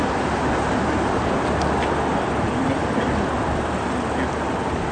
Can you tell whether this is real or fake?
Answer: real